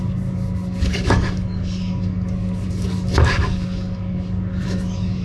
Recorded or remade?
remade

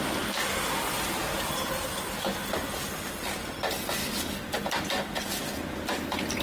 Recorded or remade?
recorded